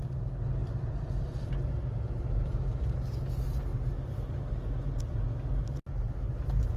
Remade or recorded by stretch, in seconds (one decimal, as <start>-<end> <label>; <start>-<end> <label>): 0.0-0.6 recorded; 0.6-1.5 remade; 1.5-6.8 recorded